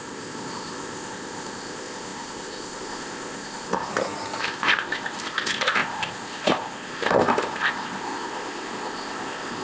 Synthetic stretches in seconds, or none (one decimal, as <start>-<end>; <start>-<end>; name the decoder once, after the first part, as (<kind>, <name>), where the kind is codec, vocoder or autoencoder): 0.0-3.9 (codec, ZipCodec); 4.4-9.6